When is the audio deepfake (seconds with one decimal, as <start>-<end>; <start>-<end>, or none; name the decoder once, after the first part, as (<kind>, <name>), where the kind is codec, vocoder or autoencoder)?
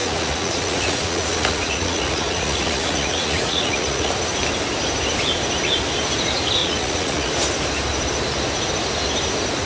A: 0.0-4.1 (vocoder, Vocos); 6.6-7.3